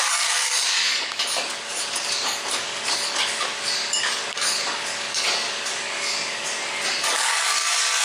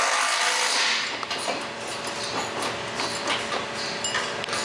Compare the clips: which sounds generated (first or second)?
first